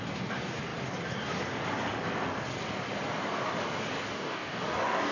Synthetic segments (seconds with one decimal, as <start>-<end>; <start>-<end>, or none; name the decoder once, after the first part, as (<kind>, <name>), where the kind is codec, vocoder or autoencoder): 4.1-5.1 (codec, DAC)